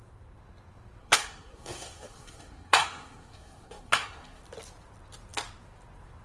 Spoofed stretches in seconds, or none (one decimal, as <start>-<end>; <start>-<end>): 1.0-4.4